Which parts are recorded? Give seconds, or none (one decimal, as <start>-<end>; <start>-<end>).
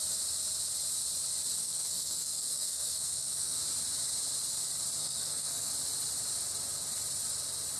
0.0-1.6; 3.6-5.0; 5.7-7.8